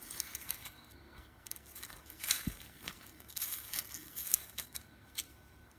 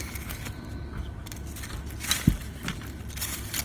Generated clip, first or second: first